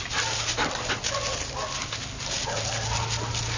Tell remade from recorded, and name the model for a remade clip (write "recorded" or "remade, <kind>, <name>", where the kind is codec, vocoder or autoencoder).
recorded